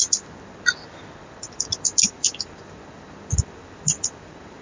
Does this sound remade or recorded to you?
remade